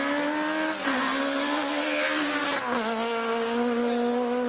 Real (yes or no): yes